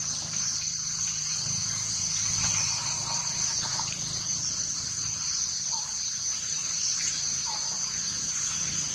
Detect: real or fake fake